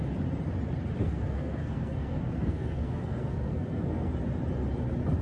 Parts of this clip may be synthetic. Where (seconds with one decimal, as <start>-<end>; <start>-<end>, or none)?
1.0-4.1